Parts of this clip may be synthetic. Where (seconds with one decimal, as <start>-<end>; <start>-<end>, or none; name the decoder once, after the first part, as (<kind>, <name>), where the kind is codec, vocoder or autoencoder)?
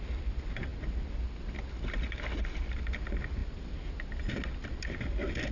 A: none